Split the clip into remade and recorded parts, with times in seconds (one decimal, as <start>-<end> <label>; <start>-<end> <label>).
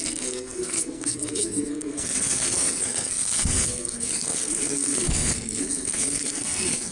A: 0.0-6.9 remade